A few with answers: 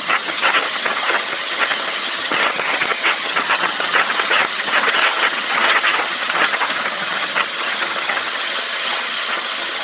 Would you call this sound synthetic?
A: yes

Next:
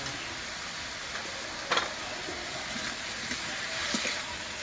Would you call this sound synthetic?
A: no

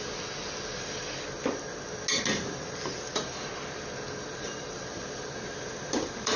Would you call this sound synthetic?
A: no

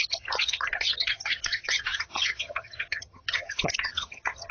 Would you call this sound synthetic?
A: yes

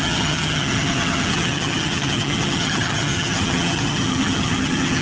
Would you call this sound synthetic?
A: yes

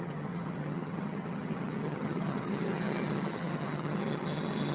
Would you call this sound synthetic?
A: yes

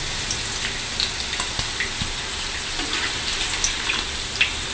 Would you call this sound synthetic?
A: no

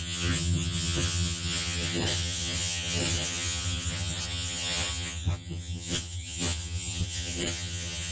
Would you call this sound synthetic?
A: yes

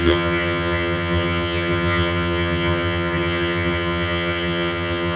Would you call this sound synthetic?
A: yes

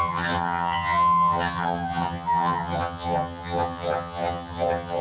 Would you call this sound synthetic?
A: yes